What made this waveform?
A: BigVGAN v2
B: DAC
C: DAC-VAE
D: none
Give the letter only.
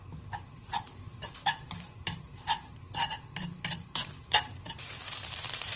A